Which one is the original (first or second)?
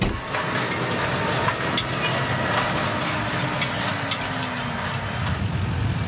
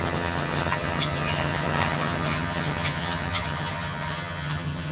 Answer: first